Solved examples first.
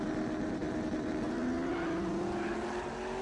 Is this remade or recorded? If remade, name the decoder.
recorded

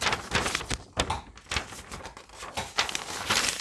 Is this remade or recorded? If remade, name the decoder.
recorded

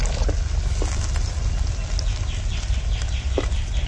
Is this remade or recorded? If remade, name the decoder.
recorded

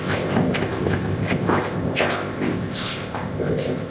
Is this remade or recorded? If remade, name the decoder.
remade, codec, ZipCodec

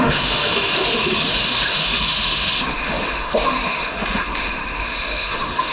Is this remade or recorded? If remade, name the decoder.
remade, autoencoder, DAC-VAE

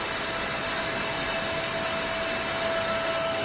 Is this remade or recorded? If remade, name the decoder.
recorded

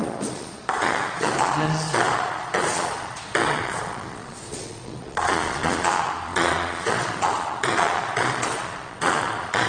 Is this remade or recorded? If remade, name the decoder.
remade, vocoder, Vocos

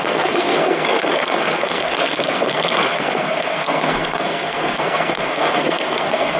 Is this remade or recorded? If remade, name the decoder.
remade, codec, SNAC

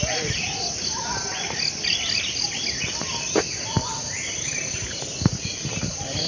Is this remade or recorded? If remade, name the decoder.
recorded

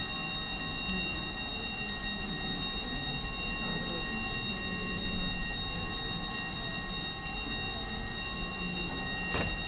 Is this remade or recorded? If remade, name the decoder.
recorded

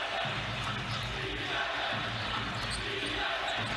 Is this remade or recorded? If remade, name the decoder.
recorded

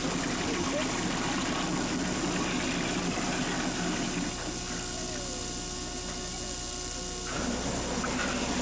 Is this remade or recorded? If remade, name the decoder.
recorded